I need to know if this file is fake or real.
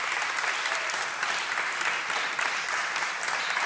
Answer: real